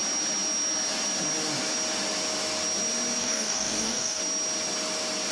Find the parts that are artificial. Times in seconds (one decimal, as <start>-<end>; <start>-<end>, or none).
3.2-4.2